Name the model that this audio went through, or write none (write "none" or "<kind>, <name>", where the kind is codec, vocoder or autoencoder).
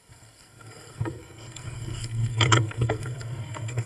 codec, SNAC